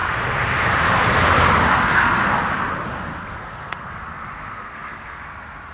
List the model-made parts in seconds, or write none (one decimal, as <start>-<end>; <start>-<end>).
1.7-2.4; 3.2-3.9; 4.5-5.2